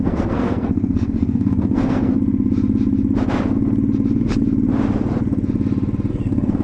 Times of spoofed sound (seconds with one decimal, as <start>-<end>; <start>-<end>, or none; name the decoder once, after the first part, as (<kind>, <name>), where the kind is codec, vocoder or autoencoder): 0.0-2.1 (codec, SNAC); 6.1-6.6